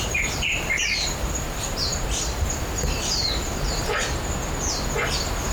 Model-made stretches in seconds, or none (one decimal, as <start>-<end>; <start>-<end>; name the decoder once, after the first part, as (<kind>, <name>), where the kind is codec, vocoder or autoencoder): 0.5-3.8 (vocoder, BigVGAN v2)